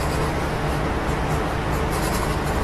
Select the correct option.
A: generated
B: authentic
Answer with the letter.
B